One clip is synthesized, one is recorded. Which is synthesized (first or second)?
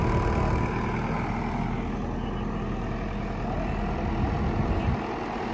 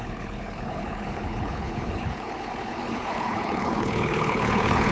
second